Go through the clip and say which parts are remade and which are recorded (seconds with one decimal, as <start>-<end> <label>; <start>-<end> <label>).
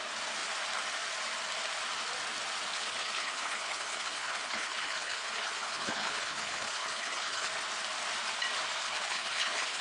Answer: 0.0-2.7 recorded; 2.7-7.5 remade; 7.5-8.8 recorded; 8.8-9.8 remade